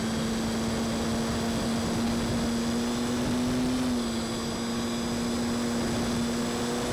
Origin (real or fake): real